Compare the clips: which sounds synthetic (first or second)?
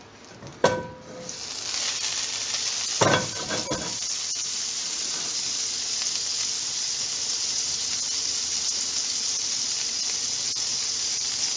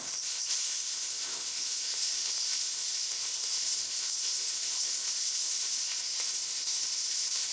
second